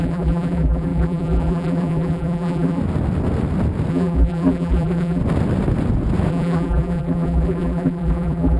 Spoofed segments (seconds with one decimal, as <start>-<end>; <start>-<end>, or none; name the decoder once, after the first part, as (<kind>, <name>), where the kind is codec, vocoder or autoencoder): 0.0-2.8 (vocoder, BigVGAN v2); 3.9-5.2; 6.3-8.6